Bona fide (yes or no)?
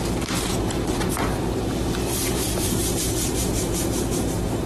no